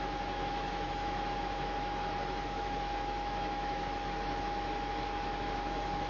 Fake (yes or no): yes